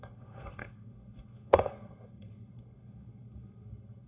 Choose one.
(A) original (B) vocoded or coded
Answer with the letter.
B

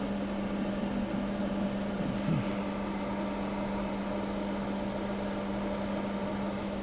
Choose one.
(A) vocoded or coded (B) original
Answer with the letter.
B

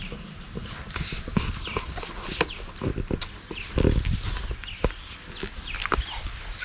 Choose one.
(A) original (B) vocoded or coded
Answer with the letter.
A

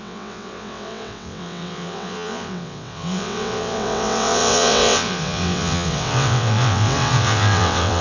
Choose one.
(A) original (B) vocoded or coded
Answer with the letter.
B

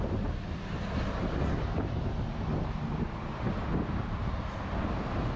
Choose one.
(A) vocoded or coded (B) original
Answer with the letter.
B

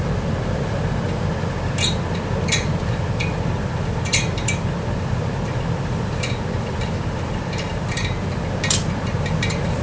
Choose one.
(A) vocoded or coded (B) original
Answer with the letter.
A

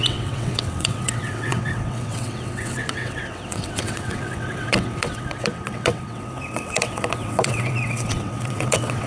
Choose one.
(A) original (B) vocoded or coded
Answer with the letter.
B